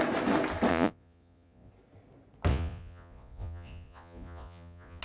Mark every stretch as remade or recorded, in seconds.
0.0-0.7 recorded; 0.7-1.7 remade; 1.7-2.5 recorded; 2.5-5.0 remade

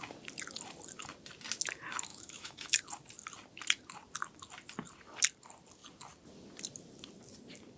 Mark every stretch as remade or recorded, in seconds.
0.0-2.1 recorded; 2.1-2.8 remade; 2.8-7.8 recorded

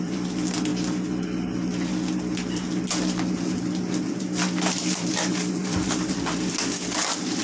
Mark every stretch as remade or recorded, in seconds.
0.0-0.7 remade; 0.7-4.1 recorded; 4.1-7.4 remade

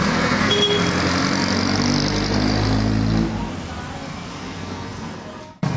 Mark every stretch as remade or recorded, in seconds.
0.0-0.5 remade; 0.5-4.0 recorded; 4.0-5.8 remade

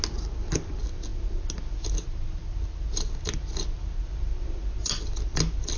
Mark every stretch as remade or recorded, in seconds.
0.0-5.8 recorded

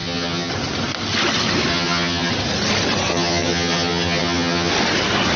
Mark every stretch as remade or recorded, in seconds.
0.0-0.5 remade; 0.5-1.7 recorded; 1.7-2.3 remade; 2.3-3.1 recorded; 3.1-4.7 remade; 4.7-5.4 recorded

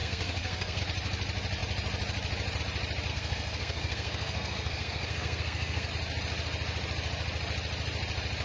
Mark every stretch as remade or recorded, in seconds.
0.0-0.8 remade; 0.8-3.1 recorded; 3.1-5.9 remade; 5.9-8.4 recorded

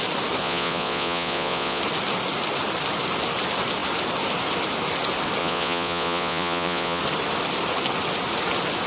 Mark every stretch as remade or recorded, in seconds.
0.0-0.4 recorded; 0.4-1.8 remade; 1.8-5.4 recorded; 5.4-7.0 remade; 7.0-8.9 recorded